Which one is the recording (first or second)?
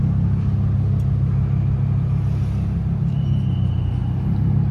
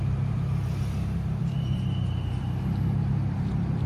first